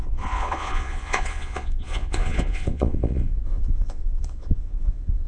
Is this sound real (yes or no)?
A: no